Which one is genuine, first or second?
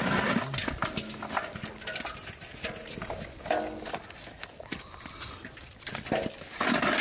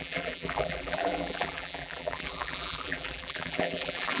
first